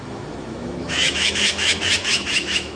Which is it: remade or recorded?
remade